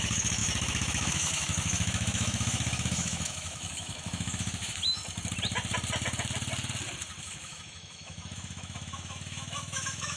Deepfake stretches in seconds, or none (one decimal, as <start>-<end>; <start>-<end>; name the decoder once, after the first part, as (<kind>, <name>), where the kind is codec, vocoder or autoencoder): 0.0-5.0 (autoencoder, DAC-VAE); 7.2-10.2